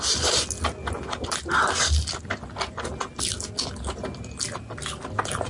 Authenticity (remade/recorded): recorded